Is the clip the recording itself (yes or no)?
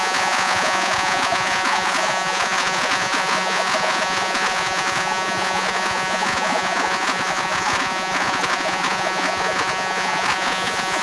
no